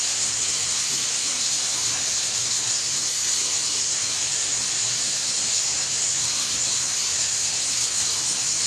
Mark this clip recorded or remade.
remade